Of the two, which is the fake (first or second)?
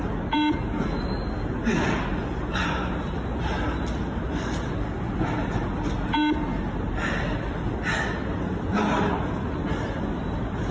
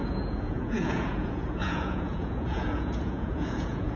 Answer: second